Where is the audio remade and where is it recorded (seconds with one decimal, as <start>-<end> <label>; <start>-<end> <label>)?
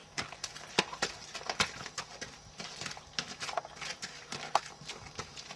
0.0-5.6 recorded